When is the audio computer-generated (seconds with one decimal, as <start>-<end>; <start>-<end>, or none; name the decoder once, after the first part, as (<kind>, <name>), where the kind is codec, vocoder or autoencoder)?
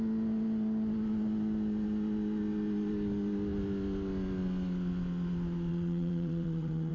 5.7-6.9 (vocoder, WaveNeXt)